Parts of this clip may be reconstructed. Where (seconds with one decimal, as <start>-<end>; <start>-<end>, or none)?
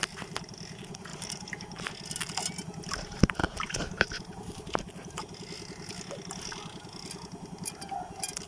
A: 3.4-5.2